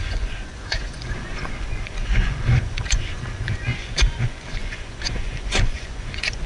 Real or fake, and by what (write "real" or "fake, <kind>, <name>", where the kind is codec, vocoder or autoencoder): fake, vocoder, Vocos